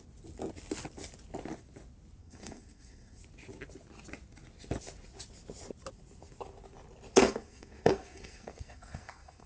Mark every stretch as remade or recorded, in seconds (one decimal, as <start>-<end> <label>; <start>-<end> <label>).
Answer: 0.0-2.2 recorded; 2.2-3.2 remade; 3.2-7.2 recorded; 7.2-9.5 remade